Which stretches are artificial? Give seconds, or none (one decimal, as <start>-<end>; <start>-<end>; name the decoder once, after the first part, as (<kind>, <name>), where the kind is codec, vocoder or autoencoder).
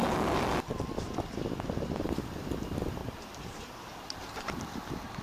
3.0-4.2 (vocoder, BigVGAN v2)